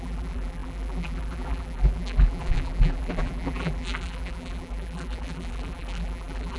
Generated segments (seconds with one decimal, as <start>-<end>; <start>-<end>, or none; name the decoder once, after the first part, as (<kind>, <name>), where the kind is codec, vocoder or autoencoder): 0.0-6.6 (vocoder, BigVGAN v2)